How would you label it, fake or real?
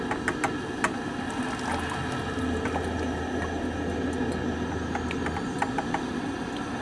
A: real